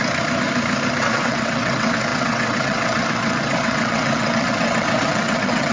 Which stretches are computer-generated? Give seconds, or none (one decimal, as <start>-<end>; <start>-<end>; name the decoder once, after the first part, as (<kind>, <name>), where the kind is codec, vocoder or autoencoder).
1.0-5.7 (vocoder, WaveNeXt)